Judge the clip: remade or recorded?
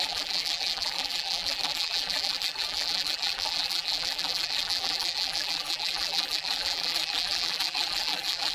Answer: remade